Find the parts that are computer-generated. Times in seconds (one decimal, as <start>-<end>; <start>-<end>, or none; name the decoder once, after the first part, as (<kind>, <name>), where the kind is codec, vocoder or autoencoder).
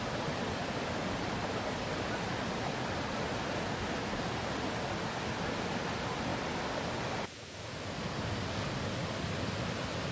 6.3-6.9 (vocoder, BigVGAN v2)